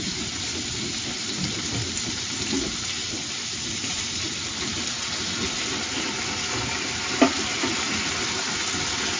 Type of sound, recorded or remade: recorded